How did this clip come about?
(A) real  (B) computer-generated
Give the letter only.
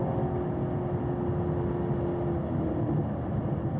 A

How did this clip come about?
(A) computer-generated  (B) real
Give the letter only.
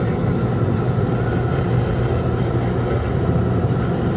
B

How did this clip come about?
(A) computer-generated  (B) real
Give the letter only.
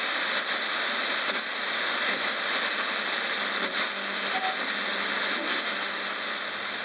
B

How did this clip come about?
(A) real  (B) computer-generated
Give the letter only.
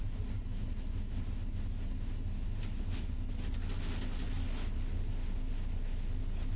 A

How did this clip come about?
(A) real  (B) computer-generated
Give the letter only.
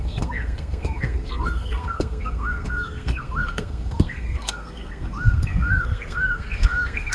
B